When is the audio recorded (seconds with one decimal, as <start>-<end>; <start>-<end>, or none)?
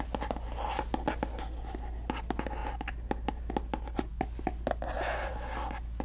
0.0-6.0